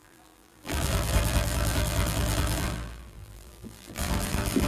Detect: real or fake fake